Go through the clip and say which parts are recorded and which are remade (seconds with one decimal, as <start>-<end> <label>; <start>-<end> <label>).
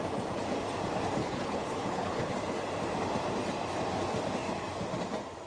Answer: 0.0-1.2 recorded; 1.2-2.3 remade; 2.3-5.5 recorded